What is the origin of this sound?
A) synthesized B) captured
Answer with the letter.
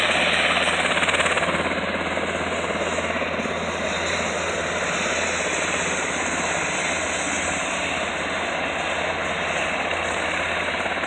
B